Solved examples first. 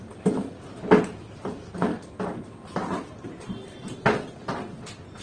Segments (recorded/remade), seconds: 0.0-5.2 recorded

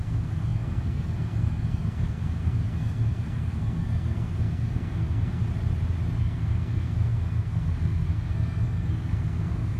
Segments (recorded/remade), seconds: 0.0-5.4 remade; 5.4-6.2 recorded; 6.2-9.8 remade

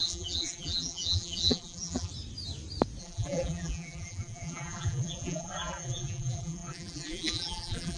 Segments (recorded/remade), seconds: 0.0-2.1 remade; 2.1-3.0 recorded; 3.0-8.0 remade

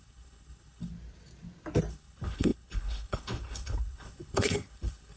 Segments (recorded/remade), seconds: 0.0-0.9 remade; 0.9-1.9 recorded; 1.9-5.2 remade